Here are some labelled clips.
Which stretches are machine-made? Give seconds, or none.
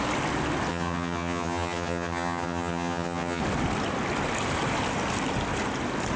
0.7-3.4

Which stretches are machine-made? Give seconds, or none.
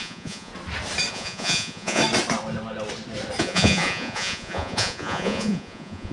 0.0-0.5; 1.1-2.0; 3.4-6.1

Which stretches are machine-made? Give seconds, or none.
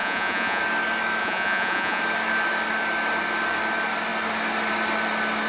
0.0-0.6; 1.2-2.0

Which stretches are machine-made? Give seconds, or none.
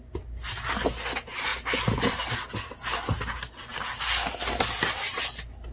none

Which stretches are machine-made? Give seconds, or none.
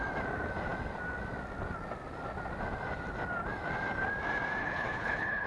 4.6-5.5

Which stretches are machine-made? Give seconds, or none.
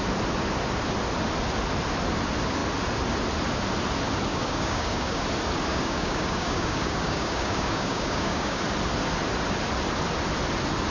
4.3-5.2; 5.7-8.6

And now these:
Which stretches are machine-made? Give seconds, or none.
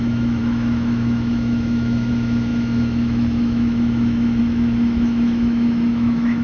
0.0-6.4